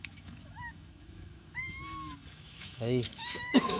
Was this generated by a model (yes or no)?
yes